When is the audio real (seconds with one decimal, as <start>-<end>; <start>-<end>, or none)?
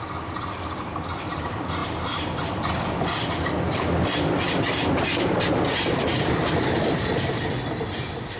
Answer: 0.0-8.4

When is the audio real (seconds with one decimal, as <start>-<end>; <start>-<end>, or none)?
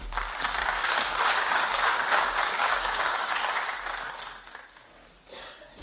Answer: 0.0-0.6; 3.4-5.8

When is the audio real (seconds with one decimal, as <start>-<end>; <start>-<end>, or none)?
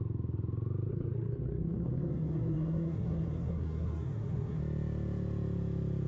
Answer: 0.0-0.9; 4.6-6.1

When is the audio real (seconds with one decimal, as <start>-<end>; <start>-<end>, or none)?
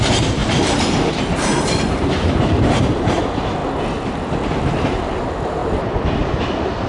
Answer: 3.6-4.6